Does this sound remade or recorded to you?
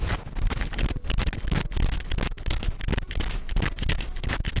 recorded